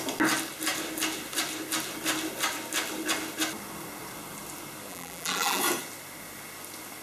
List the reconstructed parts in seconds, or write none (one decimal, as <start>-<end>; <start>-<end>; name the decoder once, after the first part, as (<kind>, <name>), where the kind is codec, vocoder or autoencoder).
4.9-5.6 (vocoder, BigVGAN v2)